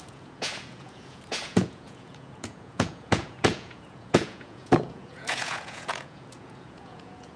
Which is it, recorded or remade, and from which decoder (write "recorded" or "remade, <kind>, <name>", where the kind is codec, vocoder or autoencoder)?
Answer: remade, vocoder, Vocos